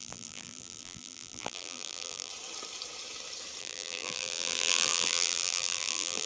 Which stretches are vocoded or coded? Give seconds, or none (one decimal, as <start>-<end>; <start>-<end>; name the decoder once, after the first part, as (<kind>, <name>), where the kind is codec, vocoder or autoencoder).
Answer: 0.0-2.3 (vocoder, BigVGAN v2); 3.6-6.3